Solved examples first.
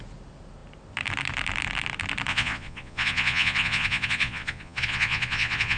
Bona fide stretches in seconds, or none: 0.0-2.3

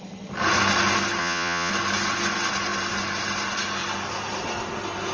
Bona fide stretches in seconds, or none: 0.0-1.2; 1.7-5.1

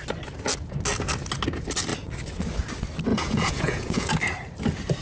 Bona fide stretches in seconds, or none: 0.0-3.1; 4.1-5.0

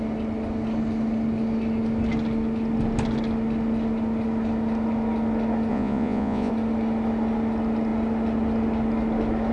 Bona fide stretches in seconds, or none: 0.0-5.7; 6.5-9.5

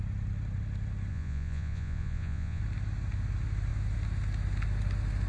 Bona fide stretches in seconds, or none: 0.0-1.1; 2.6-5.3

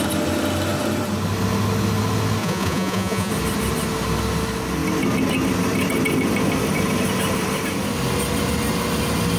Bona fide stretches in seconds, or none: 0.0-2.4; 3.3-9.4